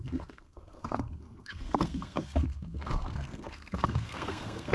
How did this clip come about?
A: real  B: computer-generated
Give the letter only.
B